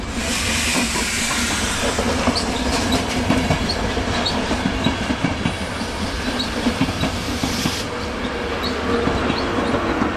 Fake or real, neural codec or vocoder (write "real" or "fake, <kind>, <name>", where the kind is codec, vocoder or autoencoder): real